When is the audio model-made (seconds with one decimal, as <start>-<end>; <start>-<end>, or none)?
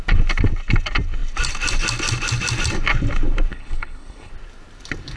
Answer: 3.5-4.3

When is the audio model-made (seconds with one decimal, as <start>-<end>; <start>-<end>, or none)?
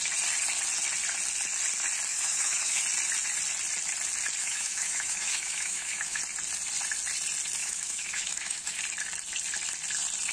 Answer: 2.1-2.8; 4.4-6.2; 7.6-8.8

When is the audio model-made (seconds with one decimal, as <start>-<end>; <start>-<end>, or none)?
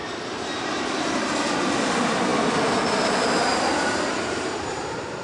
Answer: 1.7-2.3; 2.9-5.2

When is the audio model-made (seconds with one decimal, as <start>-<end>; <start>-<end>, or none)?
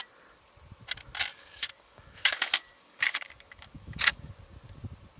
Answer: 1.2-4.3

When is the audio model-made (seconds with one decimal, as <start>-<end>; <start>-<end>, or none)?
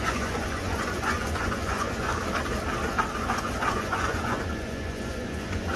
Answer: 0.0-2.1; 3.2-5.8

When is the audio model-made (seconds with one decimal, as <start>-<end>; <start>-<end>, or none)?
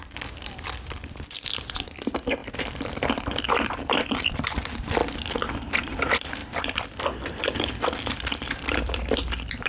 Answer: 0.0-5.0; 6.0-9.7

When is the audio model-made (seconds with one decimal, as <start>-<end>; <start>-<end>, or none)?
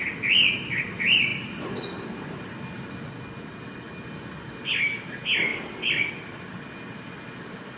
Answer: 5.5-6.1